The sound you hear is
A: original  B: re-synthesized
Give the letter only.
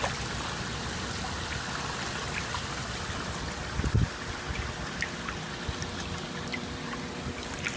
A